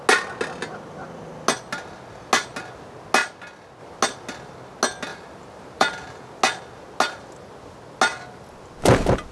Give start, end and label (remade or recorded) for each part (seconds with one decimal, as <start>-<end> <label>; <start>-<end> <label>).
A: 0.0-5.1 recorded; 5.1-6.4 remade; 6.4-9.3 recorded